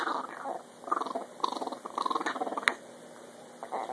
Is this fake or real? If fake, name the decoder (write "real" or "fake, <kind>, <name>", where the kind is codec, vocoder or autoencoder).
real